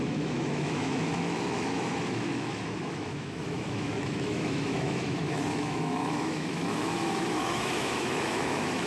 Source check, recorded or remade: remade